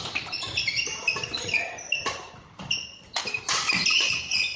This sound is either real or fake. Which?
real